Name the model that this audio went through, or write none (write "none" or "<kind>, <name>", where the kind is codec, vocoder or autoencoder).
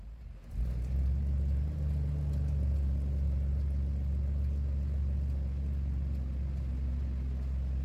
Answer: none